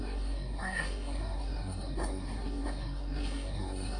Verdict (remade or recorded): remade